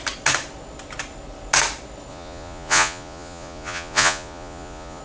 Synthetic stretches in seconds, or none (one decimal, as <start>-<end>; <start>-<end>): 2.1-5.0